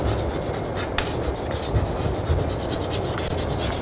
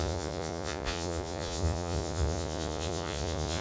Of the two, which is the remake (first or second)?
second